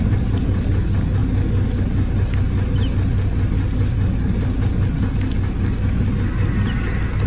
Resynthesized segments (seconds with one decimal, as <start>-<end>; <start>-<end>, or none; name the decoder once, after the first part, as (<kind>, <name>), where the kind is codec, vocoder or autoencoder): none

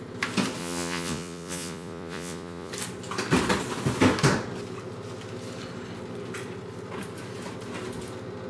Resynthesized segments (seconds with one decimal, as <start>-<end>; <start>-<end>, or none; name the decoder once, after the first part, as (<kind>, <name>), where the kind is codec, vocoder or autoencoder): 0.6-2.7 (vocoder, Vocos)

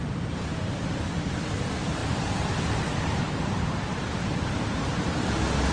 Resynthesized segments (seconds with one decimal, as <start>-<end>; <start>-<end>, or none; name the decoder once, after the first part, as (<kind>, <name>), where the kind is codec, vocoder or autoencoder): none

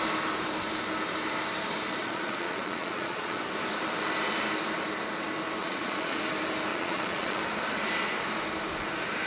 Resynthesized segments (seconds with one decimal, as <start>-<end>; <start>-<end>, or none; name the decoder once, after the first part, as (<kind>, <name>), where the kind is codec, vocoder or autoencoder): 2.0-3.4 (vocoder, Vocos); 5.6-6.2; 6.7-7.4

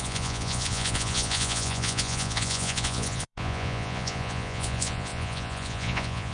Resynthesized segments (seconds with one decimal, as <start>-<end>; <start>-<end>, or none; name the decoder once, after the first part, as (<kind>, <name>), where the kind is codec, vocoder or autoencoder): 0.0-6.3 (vocoder, Vocos)

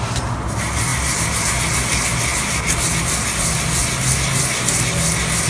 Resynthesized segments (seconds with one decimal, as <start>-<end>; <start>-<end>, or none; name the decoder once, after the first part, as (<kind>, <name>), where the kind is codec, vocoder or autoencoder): none